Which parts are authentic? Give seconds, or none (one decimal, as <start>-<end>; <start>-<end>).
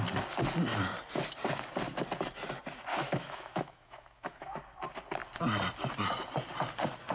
0.0-2.9; 4.6-7.1